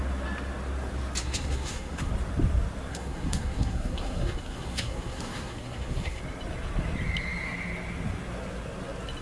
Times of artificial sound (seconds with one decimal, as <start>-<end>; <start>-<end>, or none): 1.2-2.1; 2.9-6.2